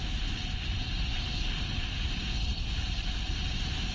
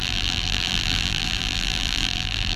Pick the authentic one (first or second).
first